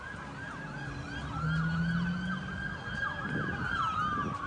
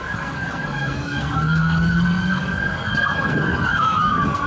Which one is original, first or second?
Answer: first